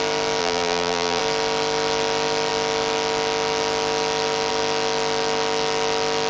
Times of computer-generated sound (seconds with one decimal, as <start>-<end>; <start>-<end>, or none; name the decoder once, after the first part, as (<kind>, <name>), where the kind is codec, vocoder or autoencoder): 0.4-1.2 (vocoder, BigVGAN v2)